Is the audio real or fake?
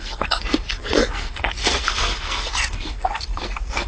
fake